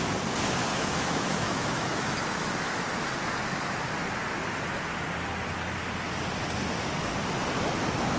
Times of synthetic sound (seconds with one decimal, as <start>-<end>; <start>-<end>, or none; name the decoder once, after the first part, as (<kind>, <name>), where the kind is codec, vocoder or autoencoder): 0.7-2.5 (autoencoder, DAC-VAE)